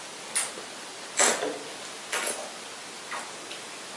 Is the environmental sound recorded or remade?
recorded